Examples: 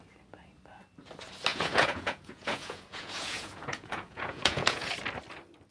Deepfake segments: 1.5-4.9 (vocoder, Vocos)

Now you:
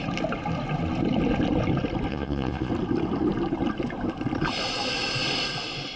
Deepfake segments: 2.1-2.7 (vocoder, Vocos)

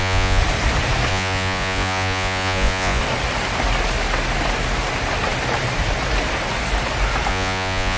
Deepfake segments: 0.0-0.4 (vocoder, Vocos); 1.1-3.0; 7.3-8.0